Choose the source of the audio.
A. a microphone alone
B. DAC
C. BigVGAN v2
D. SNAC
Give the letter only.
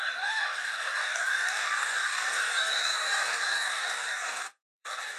B